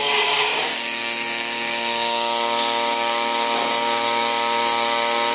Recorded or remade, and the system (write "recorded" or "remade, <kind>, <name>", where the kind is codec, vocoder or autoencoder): remade, codec, DAC